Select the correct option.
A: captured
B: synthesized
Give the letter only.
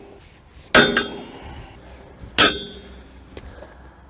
A